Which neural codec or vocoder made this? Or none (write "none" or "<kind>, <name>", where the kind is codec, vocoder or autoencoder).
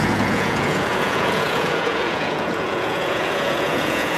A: vocoder, Vocos